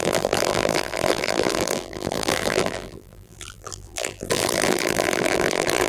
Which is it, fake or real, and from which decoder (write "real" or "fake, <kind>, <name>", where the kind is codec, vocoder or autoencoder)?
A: fake, vocoder, BigVGAN v2